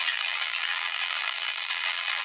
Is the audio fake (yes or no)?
yes